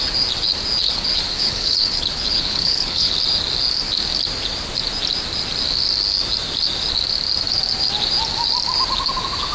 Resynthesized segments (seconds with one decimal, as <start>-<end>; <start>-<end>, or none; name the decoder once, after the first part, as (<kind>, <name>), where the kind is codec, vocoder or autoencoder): 0.8-3.1 (codec, HILCodec)